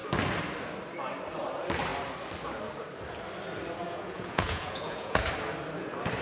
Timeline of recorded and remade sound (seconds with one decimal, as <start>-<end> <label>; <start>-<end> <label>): 0.0-3.8 recorded; 3.8-5.3 remade; 5.3-6.2 recorded